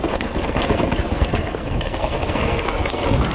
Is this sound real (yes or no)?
no